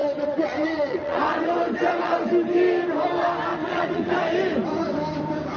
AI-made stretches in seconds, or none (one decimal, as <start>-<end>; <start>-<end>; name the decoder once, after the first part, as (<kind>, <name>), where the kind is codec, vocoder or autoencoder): 0.0-2.3 (vocoder, WaveNeXt); 3.5-4.1